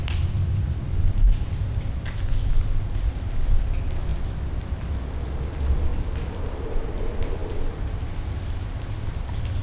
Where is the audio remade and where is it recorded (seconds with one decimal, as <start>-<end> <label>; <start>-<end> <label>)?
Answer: 0.0-9.6 recorded